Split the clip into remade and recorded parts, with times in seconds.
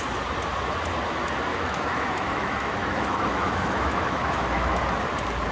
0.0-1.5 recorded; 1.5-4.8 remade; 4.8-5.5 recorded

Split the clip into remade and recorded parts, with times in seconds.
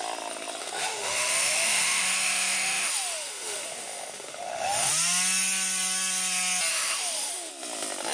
0.0-0.6 recorded; 0.6-4.9 remade; 4.9-6.7 recorded; 6.7-7.5 remade; 7.5-8.1 recorded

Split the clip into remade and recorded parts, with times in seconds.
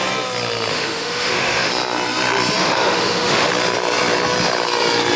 0.0-0.7 recorded; 0.7-1.7 remade; 1.7-2.6 recorded; 2.6-3.5 remade; 3.5-5.2 recorded